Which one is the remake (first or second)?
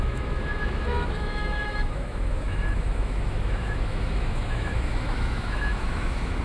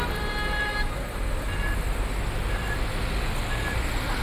first